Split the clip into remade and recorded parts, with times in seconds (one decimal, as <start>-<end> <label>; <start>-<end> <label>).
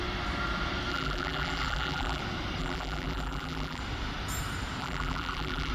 0.0-0.9 recorded; 0.9-2.2 remade; 2.2-2.6 recorded; 2.6-3.8 remade; 3.8-4.8 recorded; 4.8-5.7 remade